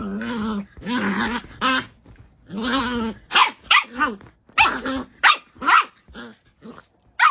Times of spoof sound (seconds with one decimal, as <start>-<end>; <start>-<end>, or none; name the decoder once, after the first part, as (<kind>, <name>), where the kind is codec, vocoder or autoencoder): none